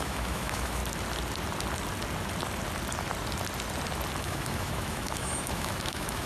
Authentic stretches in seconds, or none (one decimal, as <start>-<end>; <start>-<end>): 0.8-4.2